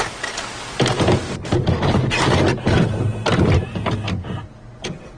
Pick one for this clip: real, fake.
real